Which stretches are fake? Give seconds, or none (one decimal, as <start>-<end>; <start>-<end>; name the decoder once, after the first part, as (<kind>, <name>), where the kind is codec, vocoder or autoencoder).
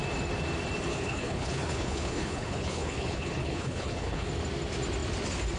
0.9-4.3 (codec, HILCodec)